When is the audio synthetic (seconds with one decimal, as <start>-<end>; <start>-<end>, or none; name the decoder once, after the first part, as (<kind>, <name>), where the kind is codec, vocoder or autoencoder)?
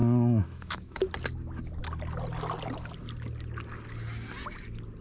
0.0-1.0 (autoencoder, DAC-VAE)